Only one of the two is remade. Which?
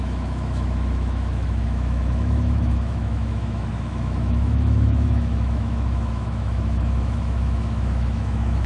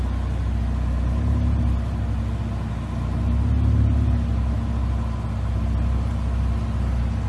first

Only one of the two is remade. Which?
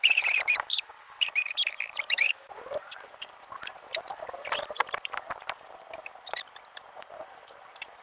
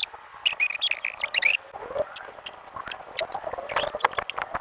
first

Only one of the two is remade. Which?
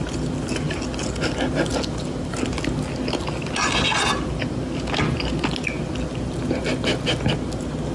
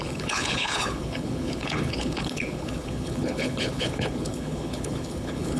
second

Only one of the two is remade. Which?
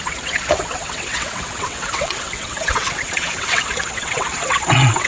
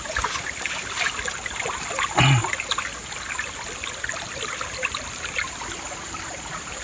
first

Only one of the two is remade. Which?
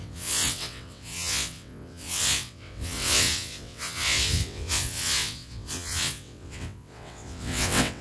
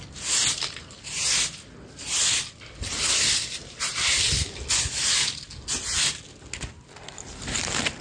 first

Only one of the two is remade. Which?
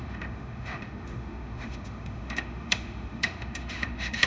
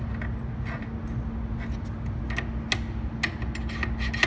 first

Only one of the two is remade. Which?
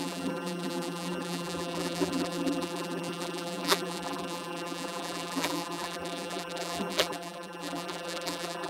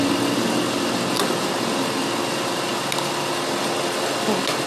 first